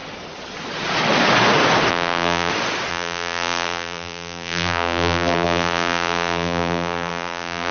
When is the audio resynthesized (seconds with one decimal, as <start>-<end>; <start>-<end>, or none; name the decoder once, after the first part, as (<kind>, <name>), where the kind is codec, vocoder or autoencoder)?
1.9-2.5 (vocoder, BigVGAN v2); 2.9-7.7